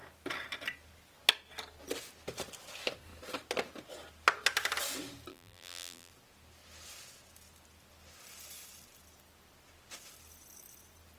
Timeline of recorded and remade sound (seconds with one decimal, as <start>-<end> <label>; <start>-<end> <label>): 0.0-5.3 recorded; 5.3-6.1 remade; 6.1-11.2 recorded